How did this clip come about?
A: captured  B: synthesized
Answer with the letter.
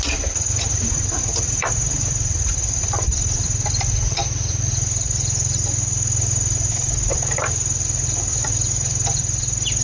B